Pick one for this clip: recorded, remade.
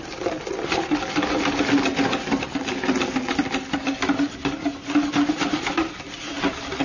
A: recorded